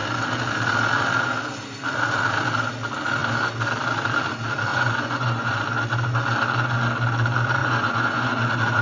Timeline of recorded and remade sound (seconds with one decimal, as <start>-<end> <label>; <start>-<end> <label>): 0.0-4.7 recorded; 4.7-5.5 remade; 5.5-7.6 recorded; 7.6-8.8 remade